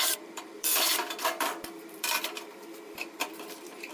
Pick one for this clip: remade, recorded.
remade